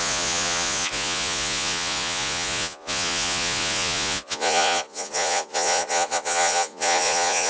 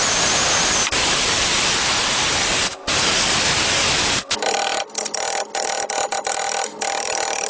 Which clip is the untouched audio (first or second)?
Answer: second